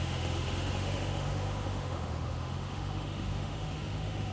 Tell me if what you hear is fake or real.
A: fake